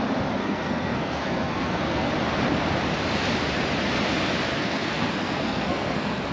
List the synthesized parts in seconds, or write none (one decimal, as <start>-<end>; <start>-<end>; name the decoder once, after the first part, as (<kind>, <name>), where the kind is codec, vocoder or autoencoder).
0.4-2.1 (codec, SNAC); 4.5-6.3